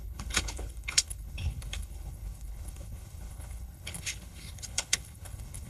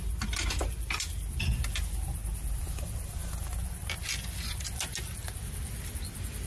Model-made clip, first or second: first